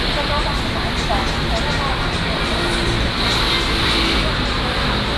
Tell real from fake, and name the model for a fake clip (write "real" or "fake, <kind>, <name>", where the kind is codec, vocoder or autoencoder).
real